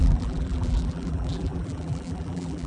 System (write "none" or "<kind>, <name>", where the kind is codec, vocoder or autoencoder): vocoder, BigVGAN v2